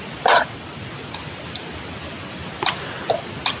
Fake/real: real